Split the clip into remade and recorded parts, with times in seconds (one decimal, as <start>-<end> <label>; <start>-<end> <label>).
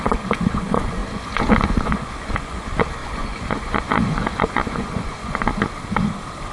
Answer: 0.0-5.5 remade; 5.5-6.5 recorded